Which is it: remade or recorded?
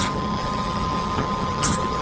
remade